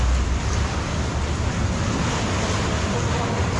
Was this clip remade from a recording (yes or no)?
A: no